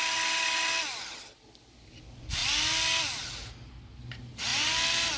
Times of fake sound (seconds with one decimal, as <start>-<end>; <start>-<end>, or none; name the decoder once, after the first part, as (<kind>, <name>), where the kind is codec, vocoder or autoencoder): none